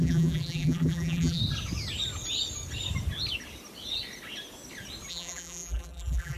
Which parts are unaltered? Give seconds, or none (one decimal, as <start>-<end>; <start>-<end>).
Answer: 1.4-5.1